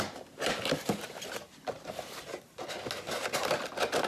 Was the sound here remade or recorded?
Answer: recorded